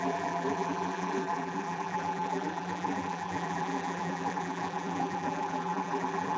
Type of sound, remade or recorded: remade